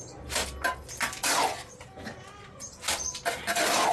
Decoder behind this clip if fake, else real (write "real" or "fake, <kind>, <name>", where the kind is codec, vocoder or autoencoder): real